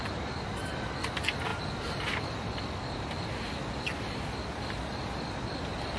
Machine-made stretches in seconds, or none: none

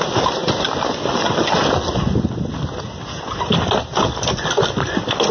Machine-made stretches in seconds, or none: none